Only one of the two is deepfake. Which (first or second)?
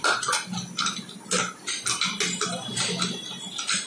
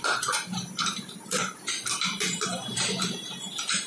second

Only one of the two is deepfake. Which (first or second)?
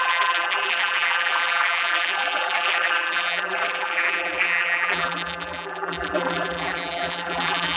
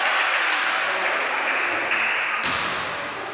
first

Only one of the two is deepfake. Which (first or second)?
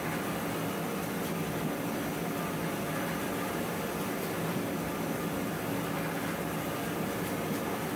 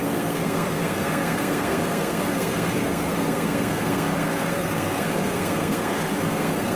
second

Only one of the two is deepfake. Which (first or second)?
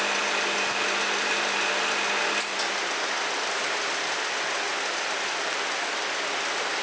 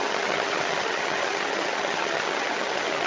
second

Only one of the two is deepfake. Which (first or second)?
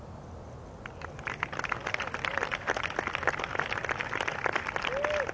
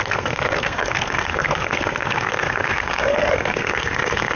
second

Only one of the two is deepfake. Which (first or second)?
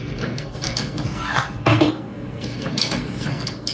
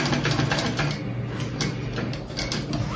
first